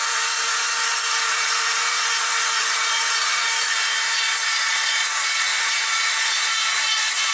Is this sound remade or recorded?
remade